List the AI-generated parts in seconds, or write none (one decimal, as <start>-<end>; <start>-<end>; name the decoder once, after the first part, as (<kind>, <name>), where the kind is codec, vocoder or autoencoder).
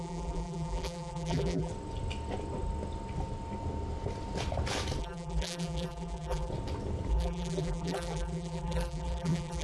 0.0-1.7 (vocoder, BigVGAN v2); 5.0-6.5; 7.1-9.6